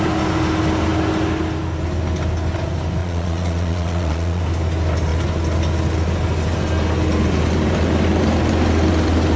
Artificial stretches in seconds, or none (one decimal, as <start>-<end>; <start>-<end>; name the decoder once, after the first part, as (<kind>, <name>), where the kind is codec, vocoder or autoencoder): 3.0-4.4 (vocoder, Vocos)